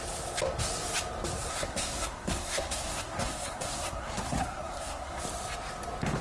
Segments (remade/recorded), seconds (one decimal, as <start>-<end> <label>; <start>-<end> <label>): 0.0-1.5 recorded; 1.5-5.2 remade; 5.2-6.2 recorded